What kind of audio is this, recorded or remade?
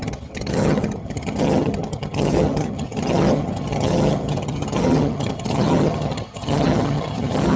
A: remade